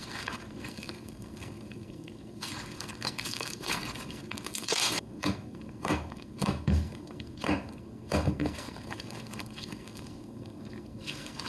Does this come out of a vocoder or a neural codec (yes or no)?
yes